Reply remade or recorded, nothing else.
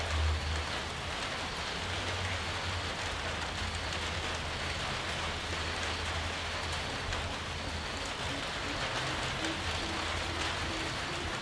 recorded